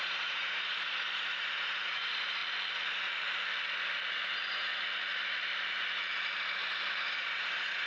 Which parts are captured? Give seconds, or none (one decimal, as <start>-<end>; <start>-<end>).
2.4-4.1; 4.7-7.1